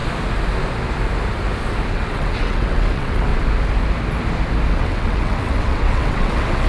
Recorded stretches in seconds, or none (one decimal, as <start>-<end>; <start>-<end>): 0.0-1.9; 3.3-4.7